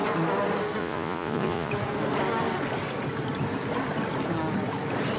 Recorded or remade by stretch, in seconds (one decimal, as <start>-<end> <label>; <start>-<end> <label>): 0.0-0.8 recorded; 0.8-1.7 remade; 1.7-5.2 recorded